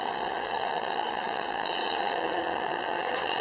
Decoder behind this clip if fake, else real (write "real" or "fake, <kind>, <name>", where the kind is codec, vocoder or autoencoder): fake, vocoder, Vocos